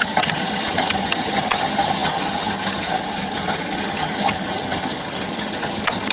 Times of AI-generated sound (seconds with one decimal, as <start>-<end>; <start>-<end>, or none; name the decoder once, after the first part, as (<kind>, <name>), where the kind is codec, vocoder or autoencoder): 0.0-6.1 (vocoder, HiFi-GAN)